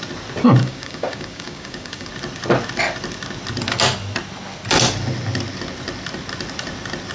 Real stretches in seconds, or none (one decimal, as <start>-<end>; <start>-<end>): 0.0-0.6; 2.1-7.1